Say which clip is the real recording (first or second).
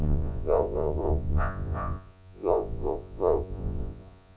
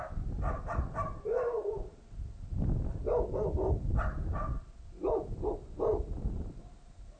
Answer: second